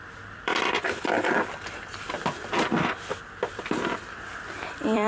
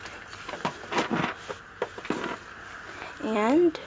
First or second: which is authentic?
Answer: second